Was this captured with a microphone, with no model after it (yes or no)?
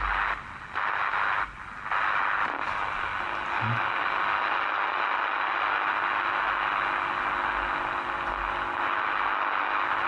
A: yes